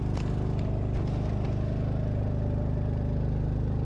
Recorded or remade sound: recorded